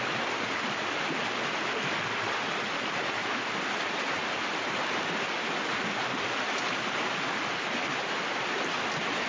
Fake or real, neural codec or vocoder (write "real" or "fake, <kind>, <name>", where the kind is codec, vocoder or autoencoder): real